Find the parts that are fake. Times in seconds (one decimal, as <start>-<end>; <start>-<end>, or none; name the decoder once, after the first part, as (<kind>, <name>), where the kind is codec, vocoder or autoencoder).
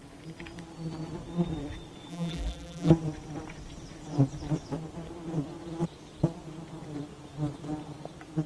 2.1-2.9 (vocoder, BigVGAN v2)